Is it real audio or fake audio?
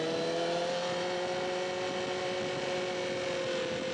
real